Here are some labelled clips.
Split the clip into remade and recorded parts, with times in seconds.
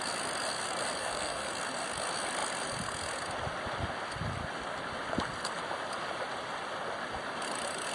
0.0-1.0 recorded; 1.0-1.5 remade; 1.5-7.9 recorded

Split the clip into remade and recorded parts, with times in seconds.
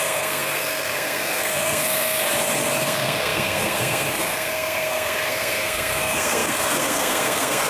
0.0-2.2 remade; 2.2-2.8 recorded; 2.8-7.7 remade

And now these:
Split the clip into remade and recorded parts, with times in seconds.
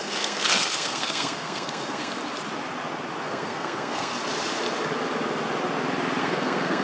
0.0-2.2 remade; 2.2-3.2 recorded; 3.2-4.1 remade; 4.1-6.2 recorded; 6.2-6.8 remade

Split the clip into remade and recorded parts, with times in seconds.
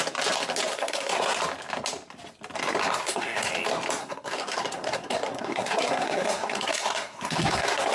0.0-0.7 recorded; 0.7-1.4 remade; 1.4-2.8 recorded; 2.8-3.5 remade; 3.5-4.0 recorded; 4.0-7.9 remade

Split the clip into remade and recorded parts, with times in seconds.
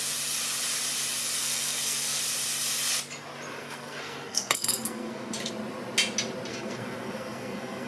0.0-1.4 recorded; 1.4-2.2 remade; 2.2-3.6 recorded; 3.6-5.5 remade; 5.5-6.5 recorded; 6.5-7.9 remade